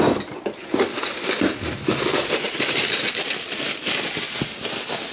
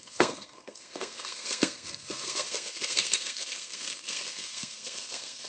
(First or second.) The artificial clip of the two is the second